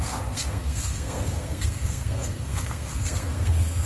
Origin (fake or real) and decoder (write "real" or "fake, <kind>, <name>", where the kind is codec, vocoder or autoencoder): fake, codec, SNAC